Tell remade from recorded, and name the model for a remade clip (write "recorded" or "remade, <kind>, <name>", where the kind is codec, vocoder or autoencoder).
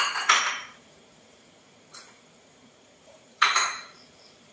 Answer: remade, vocoder, Vocos